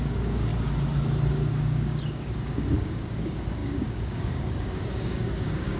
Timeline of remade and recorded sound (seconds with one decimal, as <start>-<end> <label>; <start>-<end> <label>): 0.0-0.5 remade; 0.5-1.3 recorded; 1.3-5.8 remade